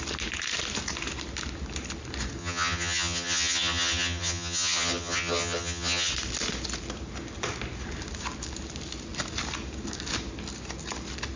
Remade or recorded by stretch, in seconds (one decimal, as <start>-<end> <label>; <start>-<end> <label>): 0.0-2.4 recorded; 2.4-6.1 remade; 6.1-11.4 recorded